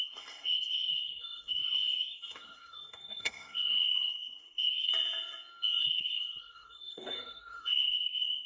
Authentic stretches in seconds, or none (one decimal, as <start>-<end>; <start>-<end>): 4.9-5.8